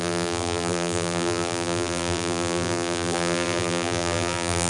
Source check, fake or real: fake